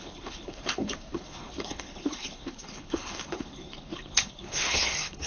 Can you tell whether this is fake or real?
fake